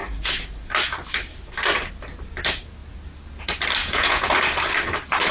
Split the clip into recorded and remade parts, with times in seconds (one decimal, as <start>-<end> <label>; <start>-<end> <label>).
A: 0.0-3.8 recorded; 3.8-4.3 remade; 4.3-5.3 recorded